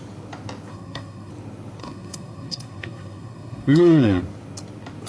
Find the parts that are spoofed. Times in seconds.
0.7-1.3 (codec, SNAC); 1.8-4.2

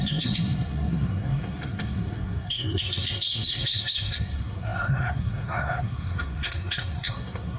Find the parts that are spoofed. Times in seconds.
0.0-7.6 (codec, SNAC)

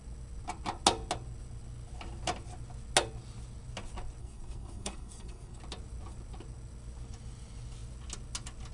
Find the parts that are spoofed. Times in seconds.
4.2-5.6 (codec, SNAC)

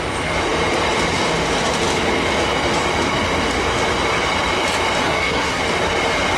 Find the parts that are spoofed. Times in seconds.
5.0-5.6 (codec, SNAC)

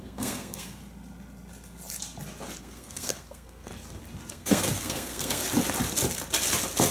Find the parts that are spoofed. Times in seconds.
0.0-0.8 (codec, SNAC); 2.6-3.7; 4.3-5.4

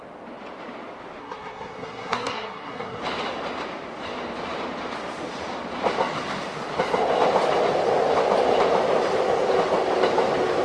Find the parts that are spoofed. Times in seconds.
1.2-3.0 (codec, SNAC)